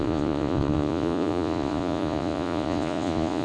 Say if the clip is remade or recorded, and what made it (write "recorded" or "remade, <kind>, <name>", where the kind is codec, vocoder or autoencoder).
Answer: remade, vocoder, Vocos